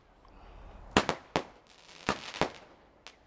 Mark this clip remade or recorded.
recorded